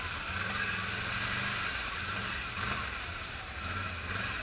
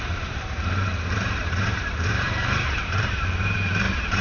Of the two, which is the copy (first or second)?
second